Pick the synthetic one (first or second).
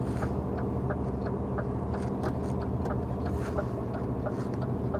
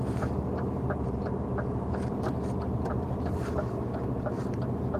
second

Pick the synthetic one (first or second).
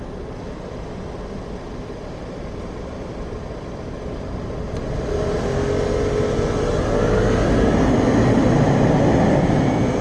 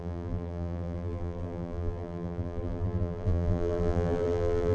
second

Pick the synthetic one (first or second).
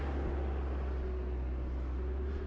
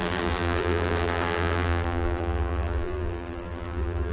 second